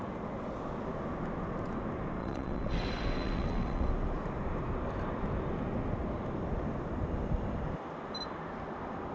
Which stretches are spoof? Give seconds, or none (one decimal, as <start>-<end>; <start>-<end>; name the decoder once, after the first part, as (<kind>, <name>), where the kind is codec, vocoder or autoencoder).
2.2-3.9 (vocoder, WaveNeXt)